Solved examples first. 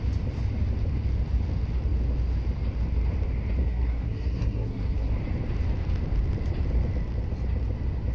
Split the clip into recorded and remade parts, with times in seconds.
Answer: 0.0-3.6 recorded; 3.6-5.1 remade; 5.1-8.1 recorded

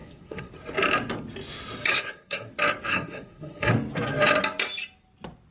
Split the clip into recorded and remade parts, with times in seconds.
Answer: 0.0-0.5 remade; 0.5-1.9 recorded; 1.9-2.5 remade; 2.5-2.9 recorded; 2.9-3.7 remade; 3.7-5.5 recorded